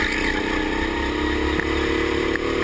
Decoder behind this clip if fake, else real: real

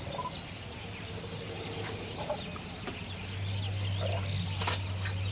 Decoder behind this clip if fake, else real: real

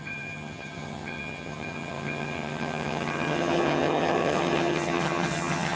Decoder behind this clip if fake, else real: fake, vocoder, HiFi-GAN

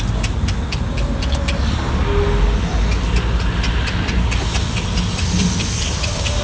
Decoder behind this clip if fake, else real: real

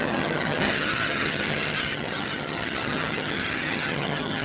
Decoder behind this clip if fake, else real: fake, vocoder, HiFi-GAN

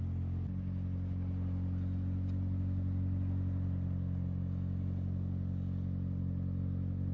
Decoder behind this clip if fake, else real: real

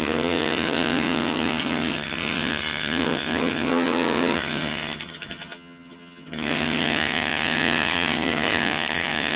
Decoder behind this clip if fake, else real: fake, vocoder, HiFi-GAN